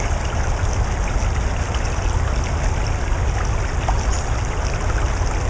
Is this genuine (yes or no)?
yes